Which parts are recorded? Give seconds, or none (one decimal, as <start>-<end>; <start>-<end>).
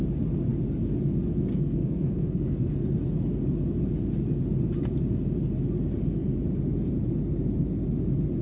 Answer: 0.0-1.5; 2.7-8.4